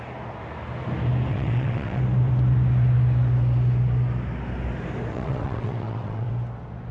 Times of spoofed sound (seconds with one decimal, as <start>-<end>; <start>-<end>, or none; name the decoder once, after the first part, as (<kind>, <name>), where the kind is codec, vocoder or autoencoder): 1.3-2.0 (vocoder, WaveNeXt); 5.1-6.3